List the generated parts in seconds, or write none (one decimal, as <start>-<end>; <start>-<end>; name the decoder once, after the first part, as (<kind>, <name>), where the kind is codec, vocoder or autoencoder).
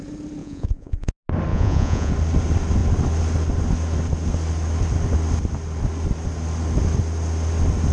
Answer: 0.4-1.1 (vocoder, Vocos); 1.5-2.1